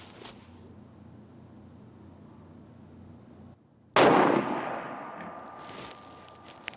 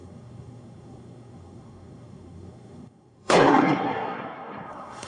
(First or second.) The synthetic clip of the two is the second